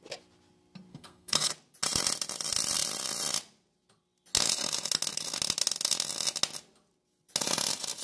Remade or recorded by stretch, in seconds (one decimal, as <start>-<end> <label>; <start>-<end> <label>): 0.0-0.9 recorded; 0.9-1.5 remade; 1.5-8.0 recorded